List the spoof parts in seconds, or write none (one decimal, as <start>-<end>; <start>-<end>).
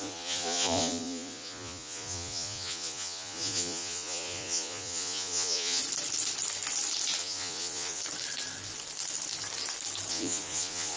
0.0-5.8; 7.2-8.0; 10.1-11.0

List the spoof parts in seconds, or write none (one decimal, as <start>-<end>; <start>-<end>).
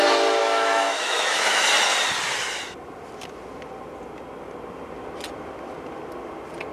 0.4-1.6